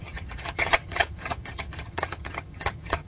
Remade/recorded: remade